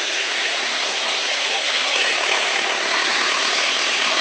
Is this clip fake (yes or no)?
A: yes